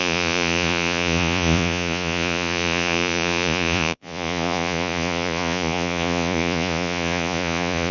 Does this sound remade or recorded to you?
remade